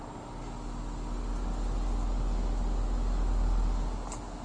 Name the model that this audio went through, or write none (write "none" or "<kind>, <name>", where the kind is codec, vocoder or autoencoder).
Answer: none